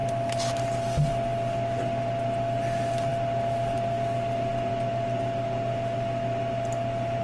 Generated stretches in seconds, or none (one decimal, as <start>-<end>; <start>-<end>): none

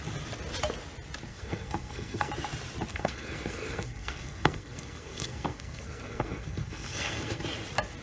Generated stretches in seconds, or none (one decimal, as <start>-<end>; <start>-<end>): 1.3-2.3; 2.9-7.4

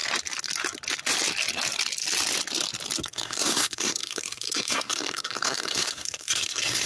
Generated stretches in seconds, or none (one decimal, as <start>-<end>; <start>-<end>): 3.1-6.9

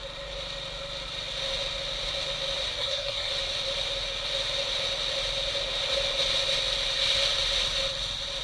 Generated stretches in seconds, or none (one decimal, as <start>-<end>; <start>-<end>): 2.8-3.3

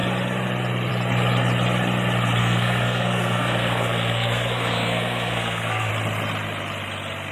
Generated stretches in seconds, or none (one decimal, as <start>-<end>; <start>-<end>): 2.4-5.9

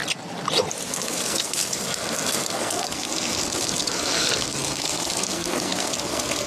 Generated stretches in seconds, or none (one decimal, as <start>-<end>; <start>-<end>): 0.9-6.5

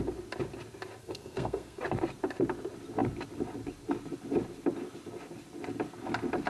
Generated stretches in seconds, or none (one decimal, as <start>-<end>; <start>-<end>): 1.0-1.8

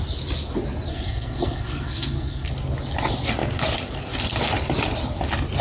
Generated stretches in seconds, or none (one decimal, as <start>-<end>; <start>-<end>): 0.9-2.5